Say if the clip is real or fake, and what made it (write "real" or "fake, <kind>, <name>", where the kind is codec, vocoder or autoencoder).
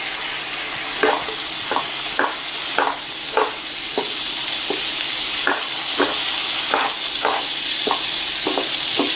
real